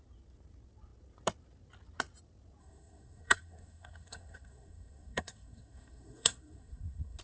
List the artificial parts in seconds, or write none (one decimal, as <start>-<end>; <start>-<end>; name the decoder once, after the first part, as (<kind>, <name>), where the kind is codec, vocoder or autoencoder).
2.6-7.2 (codec, SNAC)